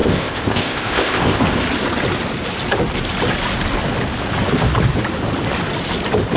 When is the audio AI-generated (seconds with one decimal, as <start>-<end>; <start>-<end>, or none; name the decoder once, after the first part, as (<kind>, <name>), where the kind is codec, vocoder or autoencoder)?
0.0-1.4 (codec, ZipCodec)